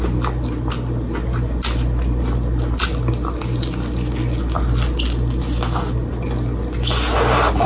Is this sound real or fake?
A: real